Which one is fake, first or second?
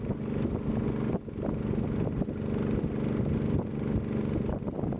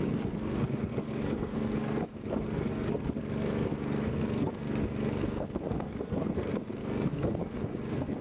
second